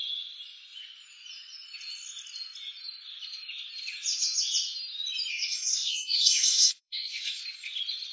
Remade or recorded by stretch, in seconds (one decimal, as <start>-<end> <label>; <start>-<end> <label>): 0.0-5.3 recorded; 5.3-7.4 remade; 7.4-8.1 recorded